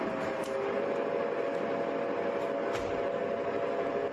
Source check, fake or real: real